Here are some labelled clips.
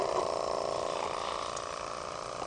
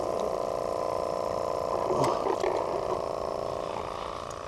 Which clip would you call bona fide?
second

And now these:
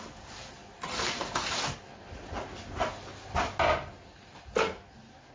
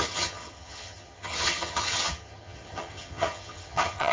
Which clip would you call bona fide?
first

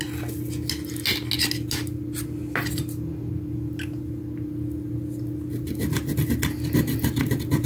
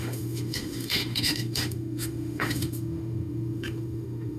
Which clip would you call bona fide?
first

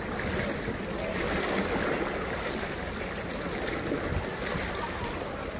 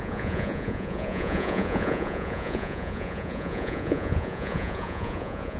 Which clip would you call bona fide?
first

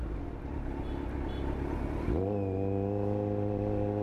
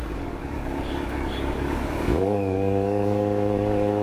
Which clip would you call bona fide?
first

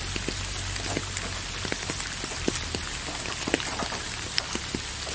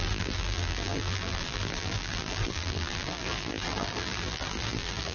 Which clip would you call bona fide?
first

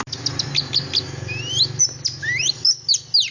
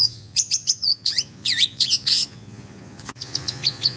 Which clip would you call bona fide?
first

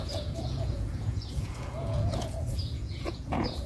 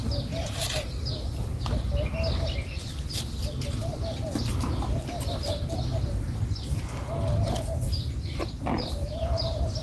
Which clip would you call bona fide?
second